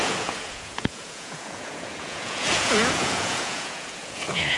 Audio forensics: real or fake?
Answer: fake